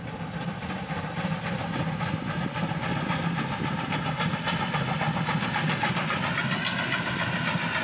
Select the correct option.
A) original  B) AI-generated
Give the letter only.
A